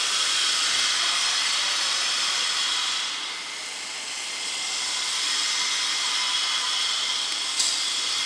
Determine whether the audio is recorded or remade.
remade